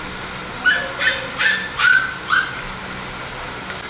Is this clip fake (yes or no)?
no